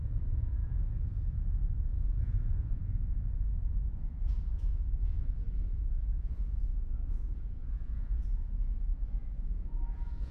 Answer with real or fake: fake